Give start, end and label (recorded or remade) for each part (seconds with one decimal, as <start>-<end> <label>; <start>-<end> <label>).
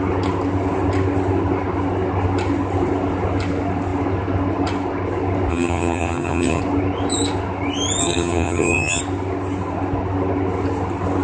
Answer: 0.0-5.5 recorded; 5.5-6.6 remade; 6.6-8.0 recorded; 8.0-9.0 remade; 9.0-11.2 recorded